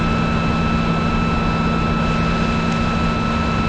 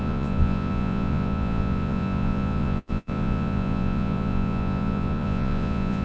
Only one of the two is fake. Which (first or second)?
second